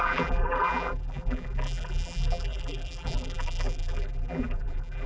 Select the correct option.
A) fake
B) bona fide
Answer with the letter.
A